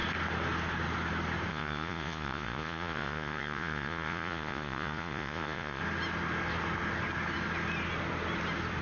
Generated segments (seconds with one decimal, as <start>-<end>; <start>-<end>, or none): 1.5-5.8